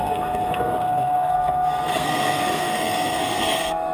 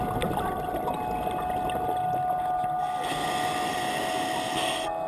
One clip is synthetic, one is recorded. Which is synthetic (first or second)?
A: first